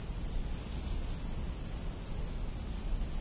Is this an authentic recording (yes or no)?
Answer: yes